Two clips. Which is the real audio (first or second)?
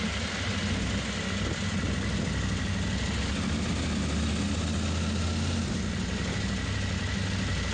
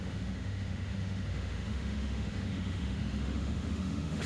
first